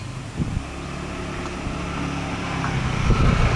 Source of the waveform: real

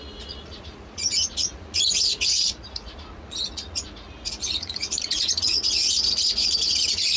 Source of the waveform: fake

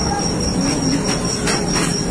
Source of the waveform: real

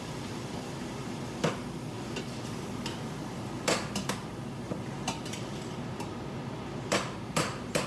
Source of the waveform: real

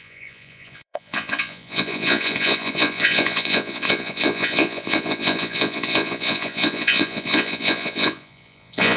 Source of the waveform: fake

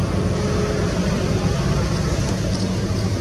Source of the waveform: real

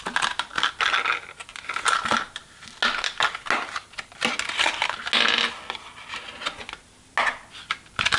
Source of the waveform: real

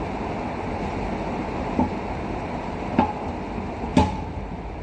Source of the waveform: real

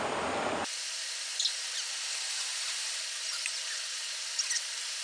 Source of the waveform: real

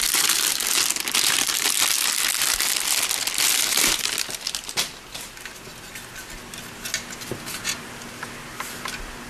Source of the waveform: real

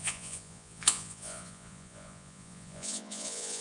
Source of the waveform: fake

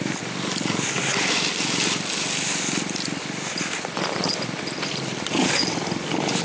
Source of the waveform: real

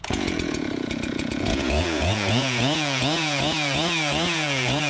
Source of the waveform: fake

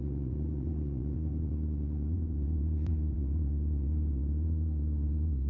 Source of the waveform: fake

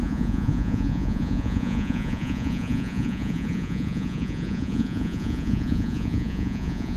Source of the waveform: fake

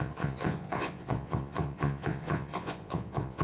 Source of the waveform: fake